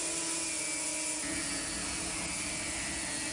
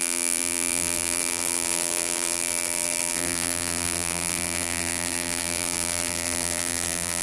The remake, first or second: second